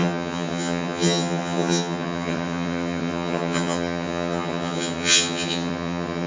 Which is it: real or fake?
fake